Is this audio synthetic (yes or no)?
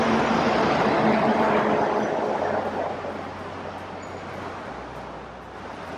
no